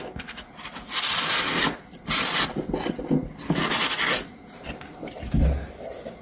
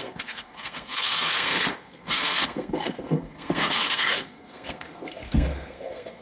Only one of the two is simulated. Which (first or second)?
second